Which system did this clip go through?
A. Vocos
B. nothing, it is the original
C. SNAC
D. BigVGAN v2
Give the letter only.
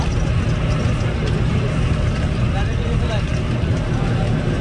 B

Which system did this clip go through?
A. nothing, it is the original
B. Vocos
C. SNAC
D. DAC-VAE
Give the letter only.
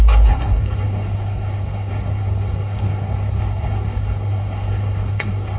C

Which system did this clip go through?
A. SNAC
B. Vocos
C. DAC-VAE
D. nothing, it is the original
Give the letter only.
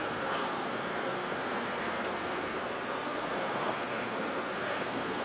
A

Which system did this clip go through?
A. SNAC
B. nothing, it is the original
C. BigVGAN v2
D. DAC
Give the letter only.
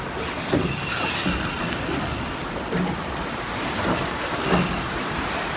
B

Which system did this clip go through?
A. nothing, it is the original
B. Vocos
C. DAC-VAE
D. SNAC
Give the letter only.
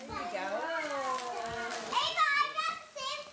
A